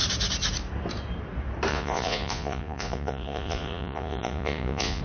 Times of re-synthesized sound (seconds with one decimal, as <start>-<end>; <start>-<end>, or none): 1.7-5.0